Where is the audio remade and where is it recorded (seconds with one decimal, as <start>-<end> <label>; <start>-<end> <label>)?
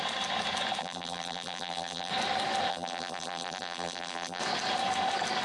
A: 0.0-0.8 recorded; 0.8-2.1 remade; 2.1-2.7 recorded; 2.7-4.4 remade; 4.4-5.4 recorded